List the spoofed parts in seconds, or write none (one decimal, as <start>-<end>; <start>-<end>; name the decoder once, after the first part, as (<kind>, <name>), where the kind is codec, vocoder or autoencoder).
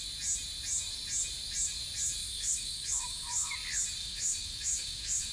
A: 2.2-3.5 (autoencoder, DAC-VAE); 4.0-5.3